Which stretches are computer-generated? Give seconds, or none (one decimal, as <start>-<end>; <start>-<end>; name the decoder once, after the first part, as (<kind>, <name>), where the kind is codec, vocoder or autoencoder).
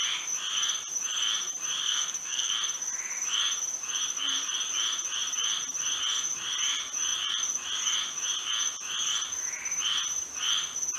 1.8-2.5 (codec, SNAC)